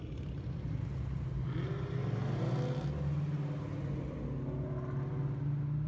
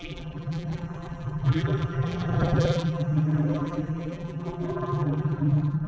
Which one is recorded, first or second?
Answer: first